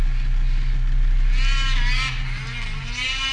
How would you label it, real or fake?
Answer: real